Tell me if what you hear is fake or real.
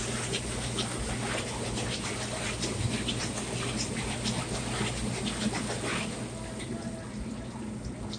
real